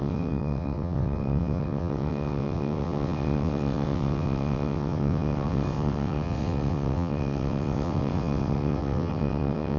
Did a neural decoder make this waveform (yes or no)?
yes